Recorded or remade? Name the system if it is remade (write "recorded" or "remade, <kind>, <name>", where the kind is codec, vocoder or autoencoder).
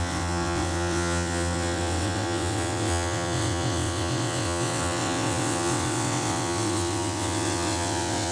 remade, vocoder, WaveNeXt